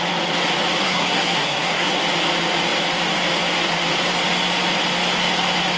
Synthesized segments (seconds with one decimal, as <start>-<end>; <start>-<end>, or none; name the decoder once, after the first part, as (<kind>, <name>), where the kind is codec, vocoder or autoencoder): 0.8-2.0 (codec, SNAC)